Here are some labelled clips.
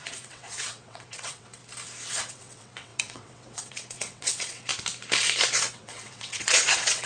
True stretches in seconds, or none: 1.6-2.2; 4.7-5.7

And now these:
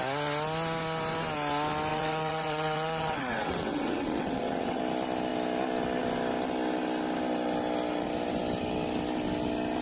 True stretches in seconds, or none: 0.0-1.9; 4.8-9.8